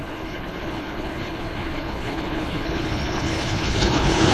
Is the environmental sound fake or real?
fake